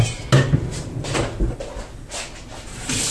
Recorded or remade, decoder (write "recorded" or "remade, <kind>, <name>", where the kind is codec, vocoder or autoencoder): recorded